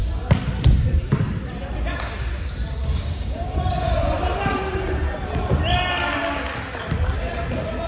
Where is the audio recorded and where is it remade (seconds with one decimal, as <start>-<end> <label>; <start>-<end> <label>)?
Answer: 0.0-2.8 recorded; 2.8-3.9 remade; 3.9-7.9 recorded